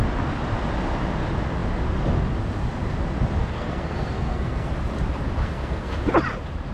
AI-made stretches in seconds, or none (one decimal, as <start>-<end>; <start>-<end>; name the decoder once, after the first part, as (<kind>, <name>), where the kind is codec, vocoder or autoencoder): 3.4-4.7 (codec, SNAC); 5.4-6.1